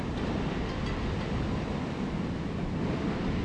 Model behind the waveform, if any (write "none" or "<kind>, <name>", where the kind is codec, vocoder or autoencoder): none